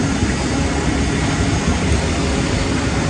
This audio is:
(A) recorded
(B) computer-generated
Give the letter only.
A